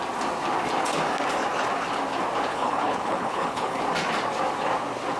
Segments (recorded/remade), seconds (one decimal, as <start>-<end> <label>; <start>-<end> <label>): 0.0-2.5 recorded; 2.5-3.8 remade; 3.8-5.2 recorded